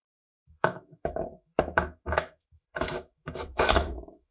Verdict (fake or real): fake